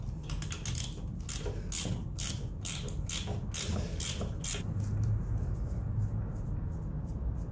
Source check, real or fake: real